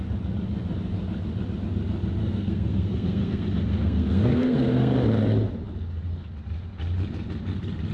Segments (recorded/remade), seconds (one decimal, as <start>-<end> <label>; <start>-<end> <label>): 0.0-2.2 recorded; 2.2-4.9 remade; 4.9-7.9 recorded